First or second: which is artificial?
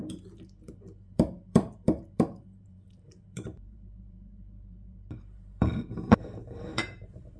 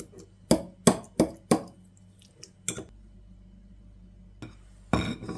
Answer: first